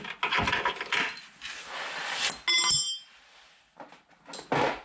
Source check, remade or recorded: recorded